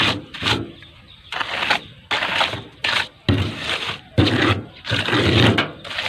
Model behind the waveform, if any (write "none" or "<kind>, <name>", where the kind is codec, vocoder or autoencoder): none